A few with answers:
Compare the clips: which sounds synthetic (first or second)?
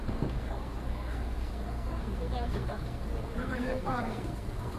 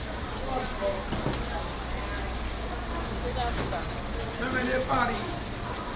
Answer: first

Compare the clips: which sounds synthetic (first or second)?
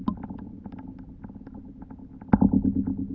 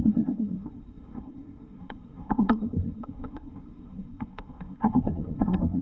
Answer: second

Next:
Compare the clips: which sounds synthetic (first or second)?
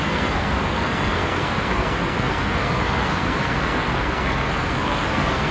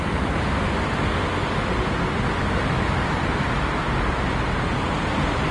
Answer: first